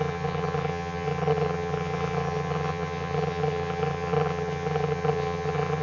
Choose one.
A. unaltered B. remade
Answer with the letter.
B